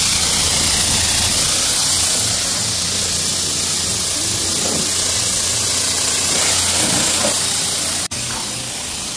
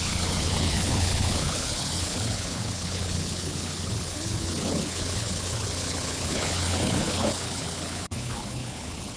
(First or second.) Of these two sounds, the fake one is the second